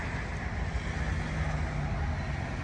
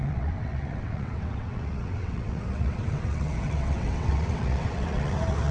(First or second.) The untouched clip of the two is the first